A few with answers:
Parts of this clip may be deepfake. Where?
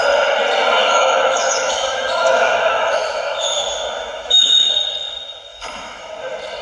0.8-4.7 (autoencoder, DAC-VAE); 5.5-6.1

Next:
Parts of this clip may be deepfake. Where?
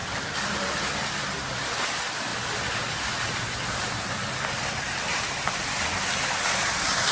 none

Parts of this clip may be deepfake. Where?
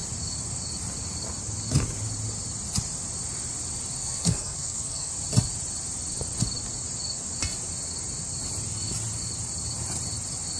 4.0-5.1 (codec, SNAC)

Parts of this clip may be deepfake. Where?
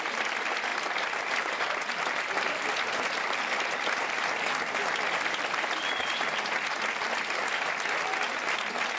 none